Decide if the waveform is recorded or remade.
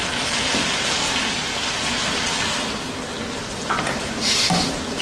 recorded